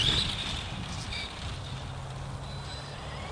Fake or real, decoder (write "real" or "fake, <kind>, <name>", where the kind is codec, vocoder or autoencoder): real